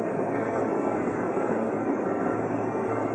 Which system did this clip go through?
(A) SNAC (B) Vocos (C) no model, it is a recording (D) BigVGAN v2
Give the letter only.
A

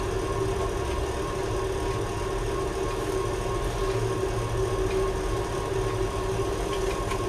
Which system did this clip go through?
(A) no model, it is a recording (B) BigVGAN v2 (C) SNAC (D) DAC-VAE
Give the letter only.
A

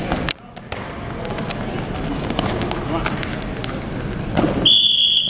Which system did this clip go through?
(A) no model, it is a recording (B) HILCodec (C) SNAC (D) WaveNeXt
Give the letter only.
A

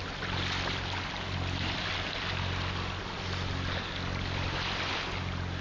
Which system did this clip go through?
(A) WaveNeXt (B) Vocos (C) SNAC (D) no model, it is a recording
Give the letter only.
D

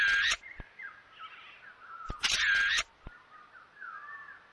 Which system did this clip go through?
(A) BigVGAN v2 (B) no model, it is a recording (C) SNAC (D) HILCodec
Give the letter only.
B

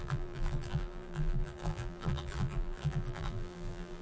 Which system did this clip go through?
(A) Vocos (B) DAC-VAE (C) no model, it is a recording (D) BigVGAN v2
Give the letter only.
D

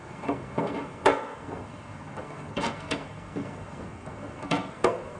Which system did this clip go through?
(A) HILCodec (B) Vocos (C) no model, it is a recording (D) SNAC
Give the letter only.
D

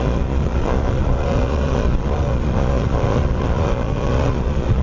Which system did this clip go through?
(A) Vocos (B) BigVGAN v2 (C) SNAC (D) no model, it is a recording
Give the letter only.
A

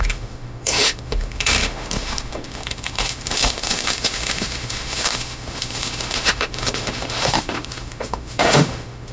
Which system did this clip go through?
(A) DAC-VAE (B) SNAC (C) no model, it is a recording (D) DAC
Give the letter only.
A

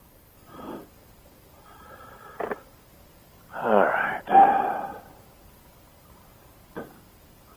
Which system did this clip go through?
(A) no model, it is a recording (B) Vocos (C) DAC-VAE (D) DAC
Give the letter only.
A